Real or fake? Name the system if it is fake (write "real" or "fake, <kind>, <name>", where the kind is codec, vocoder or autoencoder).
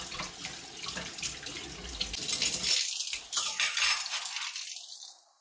real